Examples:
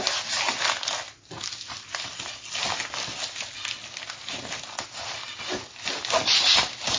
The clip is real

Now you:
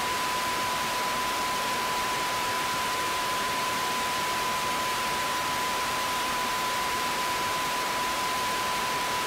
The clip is fake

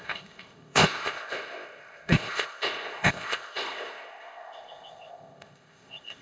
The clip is fake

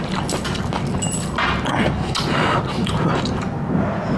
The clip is real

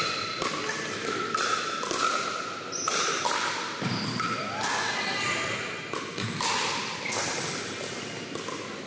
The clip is real